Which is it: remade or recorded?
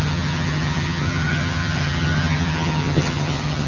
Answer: remade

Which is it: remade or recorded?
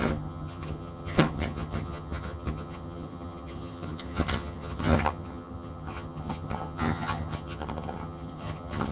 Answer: remade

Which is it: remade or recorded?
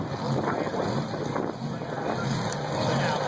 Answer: recorded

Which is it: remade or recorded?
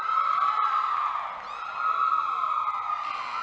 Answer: recorded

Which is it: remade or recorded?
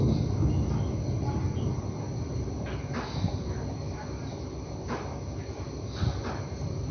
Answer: recorded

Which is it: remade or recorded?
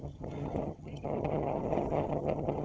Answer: remade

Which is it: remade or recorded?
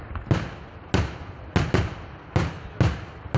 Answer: recorded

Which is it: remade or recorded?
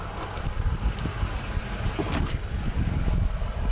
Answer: recorded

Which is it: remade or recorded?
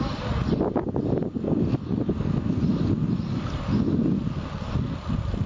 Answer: recorded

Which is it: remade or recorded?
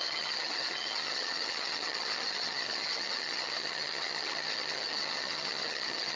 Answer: remade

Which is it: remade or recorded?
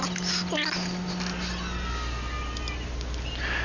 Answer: recorded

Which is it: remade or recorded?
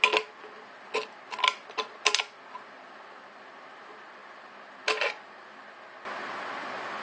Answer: recorded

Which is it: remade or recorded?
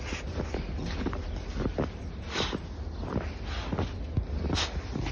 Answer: recorded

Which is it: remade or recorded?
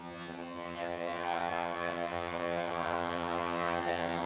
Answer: remade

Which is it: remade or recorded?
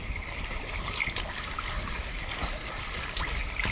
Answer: recorded